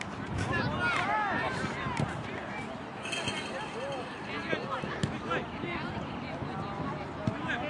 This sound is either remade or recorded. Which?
recorded